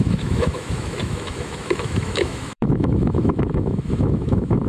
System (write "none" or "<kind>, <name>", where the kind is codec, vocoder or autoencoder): autoencoder, DAC-VAE